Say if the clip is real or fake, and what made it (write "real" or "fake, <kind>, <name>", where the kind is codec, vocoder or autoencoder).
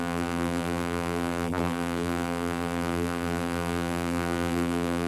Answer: fake, vocoder, BigVGAN v2